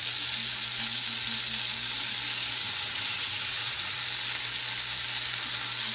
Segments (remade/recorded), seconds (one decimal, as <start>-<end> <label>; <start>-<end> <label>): 0.0-2.6 recorded; 2.6-4.0 remade; 4.0-5.9 recorded